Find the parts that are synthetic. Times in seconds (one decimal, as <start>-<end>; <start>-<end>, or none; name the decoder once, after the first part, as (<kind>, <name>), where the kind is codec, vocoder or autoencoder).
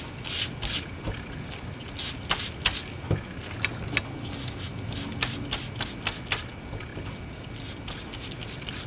none